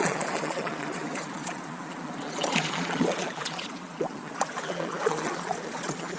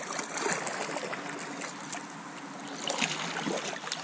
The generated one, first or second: first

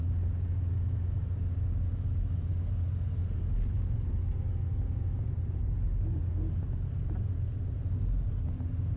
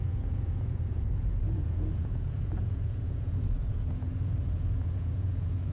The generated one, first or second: second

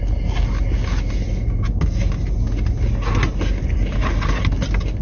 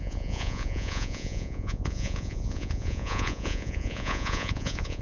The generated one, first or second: second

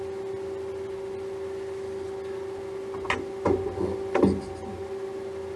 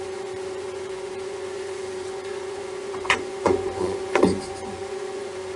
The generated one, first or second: second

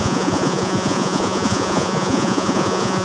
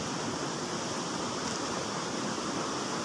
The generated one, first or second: first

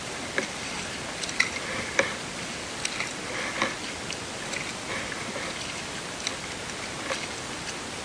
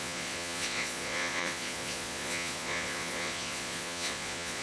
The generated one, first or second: second